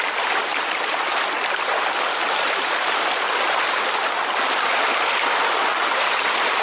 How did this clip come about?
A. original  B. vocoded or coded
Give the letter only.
A